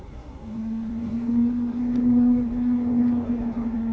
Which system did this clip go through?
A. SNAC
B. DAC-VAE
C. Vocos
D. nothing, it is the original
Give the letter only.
A